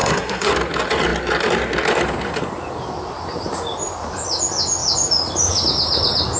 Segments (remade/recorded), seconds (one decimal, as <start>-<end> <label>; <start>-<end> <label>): 0.0-0.5 remade; 0.5-6.4 recorded